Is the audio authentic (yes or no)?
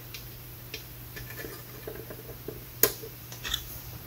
yes